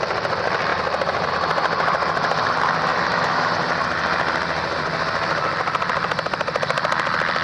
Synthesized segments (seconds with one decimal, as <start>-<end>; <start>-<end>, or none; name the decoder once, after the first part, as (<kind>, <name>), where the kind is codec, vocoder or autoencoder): 2.9-3.5 (autoencoder, DAC-VAE)